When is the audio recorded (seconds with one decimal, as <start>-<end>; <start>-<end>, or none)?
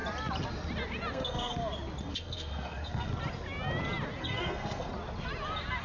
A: 0.0-1.1; 1.5-2.0; 3.1-4.2; 4.9-5.8